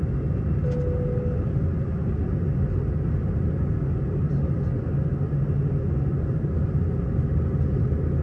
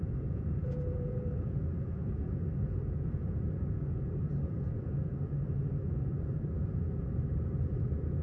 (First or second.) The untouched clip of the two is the first